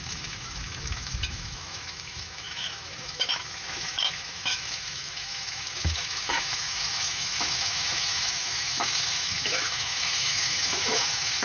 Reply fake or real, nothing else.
fake